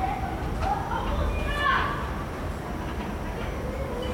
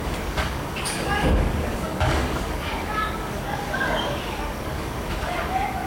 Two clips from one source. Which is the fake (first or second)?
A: second